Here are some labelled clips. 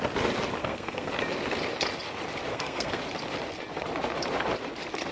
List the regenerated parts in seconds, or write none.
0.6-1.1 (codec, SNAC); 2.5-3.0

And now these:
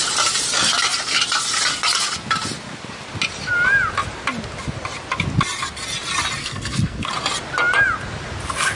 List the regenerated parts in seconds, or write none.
6.4-7.1 (codec, SNAC)